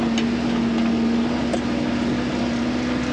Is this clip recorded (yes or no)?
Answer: yes